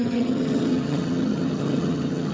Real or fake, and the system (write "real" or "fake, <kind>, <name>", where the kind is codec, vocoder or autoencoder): fake, vocoder, HiFi-GAN